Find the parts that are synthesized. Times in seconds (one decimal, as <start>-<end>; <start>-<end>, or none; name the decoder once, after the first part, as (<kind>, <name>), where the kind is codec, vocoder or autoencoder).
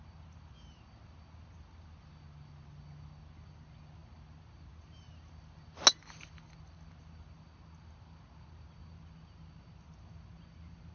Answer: none